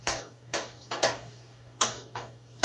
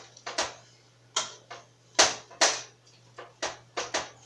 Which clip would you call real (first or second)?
second